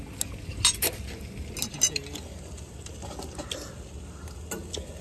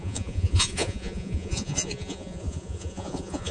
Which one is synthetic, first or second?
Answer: second